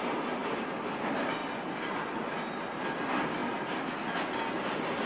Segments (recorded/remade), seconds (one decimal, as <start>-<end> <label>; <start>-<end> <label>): 0.0-5.1 recorded